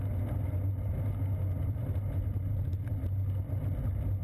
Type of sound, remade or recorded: recorded